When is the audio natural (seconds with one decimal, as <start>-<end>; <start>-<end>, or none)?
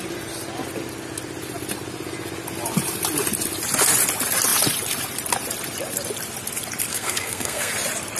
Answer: 0.0-6.9; 7.7-8.2